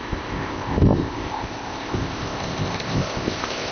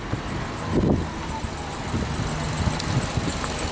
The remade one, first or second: first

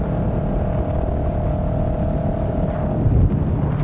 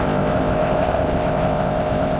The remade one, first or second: second